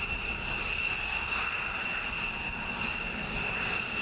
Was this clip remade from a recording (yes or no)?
no